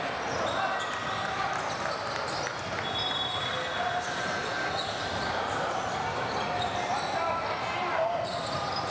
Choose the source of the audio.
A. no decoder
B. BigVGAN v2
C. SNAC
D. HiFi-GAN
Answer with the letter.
A